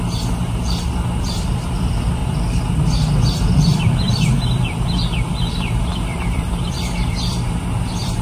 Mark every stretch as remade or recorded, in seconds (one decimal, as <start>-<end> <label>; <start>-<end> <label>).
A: 0.0-2.2 remade; 2.2-3.5 recorded; 3.5-8.2 remade